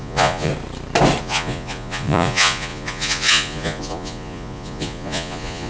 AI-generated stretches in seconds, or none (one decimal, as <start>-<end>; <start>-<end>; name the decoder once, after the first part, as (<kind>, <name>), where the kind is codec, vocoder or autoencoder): 0.0-0.5 (vocoder, Vocos); 1.2-5.7